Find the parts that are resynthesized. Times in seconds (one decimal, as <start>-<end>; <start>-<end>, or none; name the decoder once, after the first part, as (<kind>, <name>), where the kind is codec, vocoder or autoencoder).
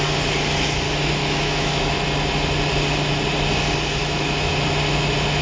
1.2-1.9 (autoencoder, DAC-VAE); 4.0-4.5